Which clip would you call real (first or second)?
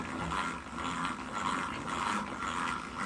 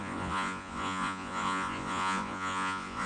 first